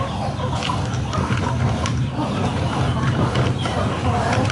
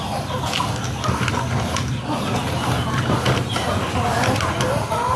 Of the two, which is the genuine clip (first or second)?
second